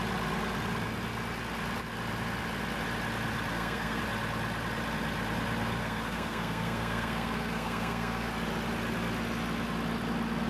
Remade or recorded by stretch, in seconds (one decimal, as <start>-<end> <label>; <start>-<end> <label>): 0.0-3.5 recorded; 3.5-4.0 remade; 4.0-5.8 recorded; 5.8-8.3 remade; 8.3-10.5 recorded